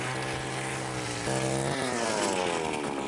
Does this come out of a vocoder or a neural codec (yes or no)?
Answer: no